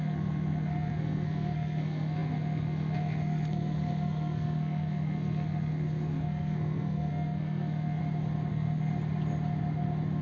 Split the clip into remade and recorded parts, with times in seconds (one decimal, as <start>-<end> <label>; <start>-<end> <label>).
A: 0.0-8.0 remade; 8.0-8.5 recorded; 8.5-8.9 remade; 8.9-10.2 recorded